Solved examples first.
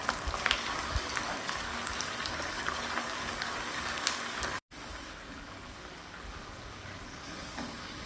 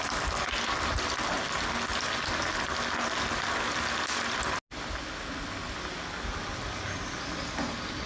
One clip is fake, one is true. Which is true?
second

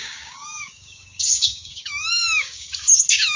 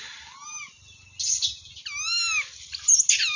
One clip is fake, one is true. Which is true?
second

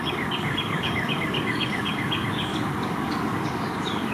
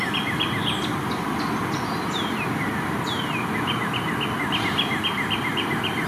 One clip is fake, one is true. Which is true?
second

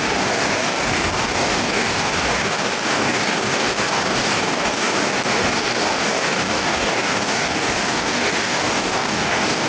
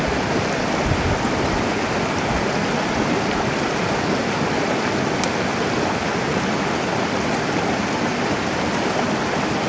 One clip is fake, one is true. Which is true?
second